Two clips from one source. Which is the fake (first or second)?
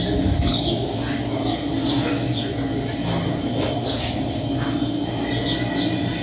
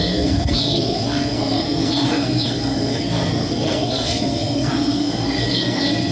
second